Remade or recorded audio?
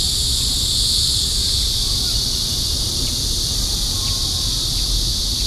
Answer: recorded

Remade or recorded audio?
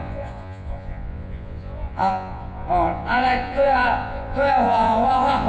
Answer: remade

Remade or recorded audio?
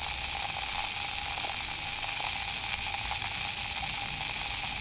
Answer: recorded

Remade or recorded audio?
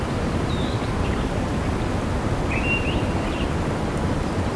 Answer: recorded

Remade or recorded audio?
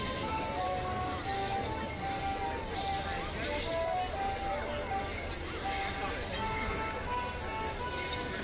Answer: recorded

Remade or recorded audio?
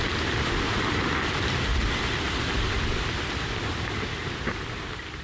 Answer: recorded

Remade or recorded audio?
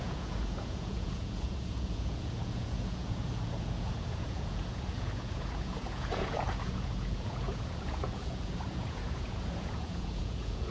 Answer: remade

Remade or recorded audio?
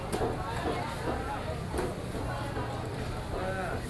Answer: recorded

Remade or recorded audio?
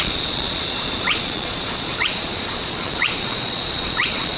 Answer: remade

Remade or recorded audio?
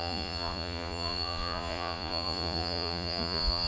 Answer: remade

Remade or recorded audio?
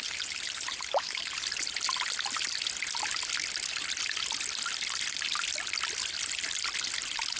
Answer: recorded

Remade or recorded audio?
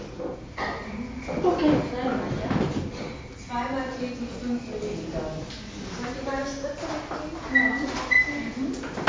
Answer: recorded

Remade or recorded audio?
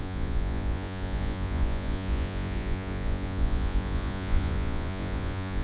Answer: remade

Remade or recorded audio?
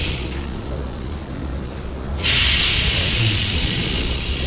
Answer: remade